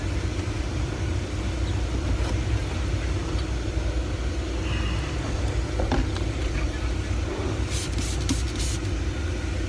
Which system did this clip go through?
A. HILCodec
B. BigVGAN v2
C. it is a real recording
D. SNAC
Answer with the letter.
C